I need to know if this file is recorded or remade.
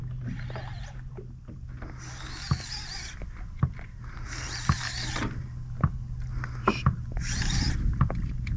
recorded